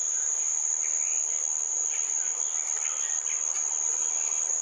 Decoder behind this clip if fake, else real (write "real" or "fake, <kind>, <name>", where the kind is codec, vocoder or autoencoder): real